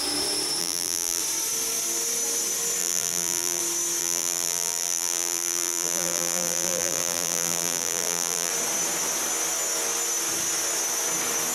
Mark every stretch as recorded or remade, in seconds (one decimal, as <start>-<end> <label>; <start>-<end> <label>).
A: 0.0-0.6 recorded; 0.6-1.2 remade; 1.2-2.8 recorded; 2.8-3.6 remade; 3.6-4.0 recorded; 4.0-8.5 remade; 8.5-11.5 recorded